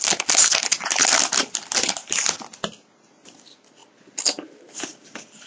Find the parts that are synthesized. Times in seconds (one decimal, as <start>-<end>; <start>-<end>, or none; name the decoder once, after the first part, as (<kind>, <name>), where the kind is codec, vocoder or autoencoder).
none